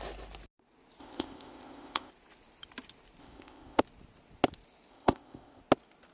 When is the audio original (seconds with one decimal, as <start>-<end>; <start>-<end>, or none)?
0.0-1.0; 2.1-3.2; 3.8-4.9; 5.6-6.1